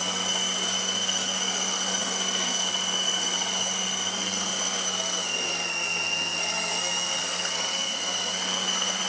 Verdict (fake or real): fake